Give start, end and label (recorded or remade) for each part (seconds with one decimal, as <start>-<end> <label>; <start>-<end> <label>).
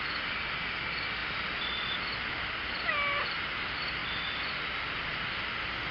0.0-5.9 recorded